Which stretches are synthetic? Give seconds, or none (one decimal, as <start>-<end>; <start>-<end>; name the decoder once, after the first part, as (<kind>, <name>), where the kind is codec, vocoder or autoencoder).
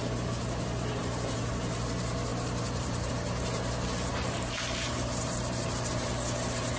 1.0-1.5 (vocoder, BigVGAN v2); 2.3-3.1; 4.1-5.9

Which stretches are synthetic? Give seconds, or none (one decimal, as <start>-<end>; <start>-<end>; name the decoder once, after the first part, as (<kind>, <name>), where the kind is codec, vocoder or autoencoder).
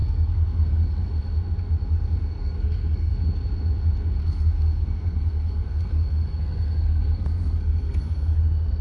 0.0-1.1 (codec, SNAC); 2.4-3.1; 4.2-8.4